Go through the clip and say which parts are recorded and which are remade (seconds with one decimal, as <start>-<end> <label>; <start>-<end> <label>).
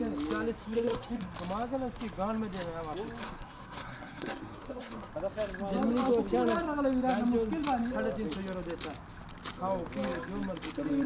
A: 0.0-0.6 recorded; 0.6-1.3 remade; 1.3-3.2 recorded; 3.2-5.1 remade; 5.1-11.1 recorded